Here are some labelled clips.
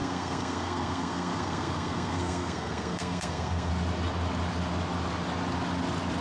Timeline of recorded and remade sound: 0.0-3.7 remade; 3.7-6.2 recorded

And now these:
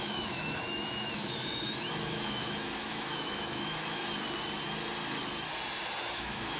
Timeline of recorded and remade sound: 0.0-4.0 remade; 4.0-6.0 recorded; 6.0-6.6 remade

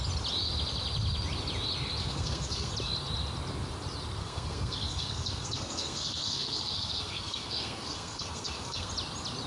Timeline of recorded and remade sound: 0.0-2.0 recorded; 2.0-2.7 remade; 2.7-4.2 recorded; 4.2-8.9 remade; 8.9-9.5 recorded

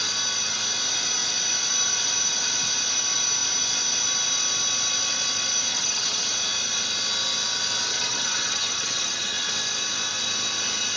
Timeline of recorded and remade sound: 0.0-5.7 recorded; 5.7-6.3 remade; 6.3-7.9 recorded; 7.9-9.5 remade; 9.5-11.0 recorded

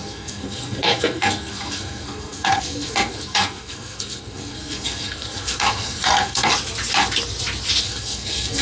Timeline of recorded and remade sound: 0.0-6.5 remade; 6.5-7.8 recorded; 7.8-8.6 remade

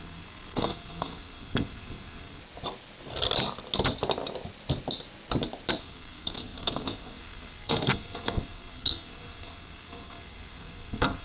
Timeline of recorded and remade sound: 0.0-2.4 remade; 2.4-5.8 recorded; 5.8-11.2 remade

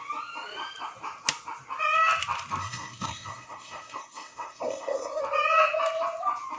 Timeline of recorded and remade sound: 0.0-2.6 recorded; 2.6-5.2 remade; 5.2-6.6 recorded